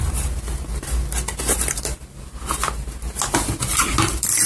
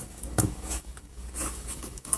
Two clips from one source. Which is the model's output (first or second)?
second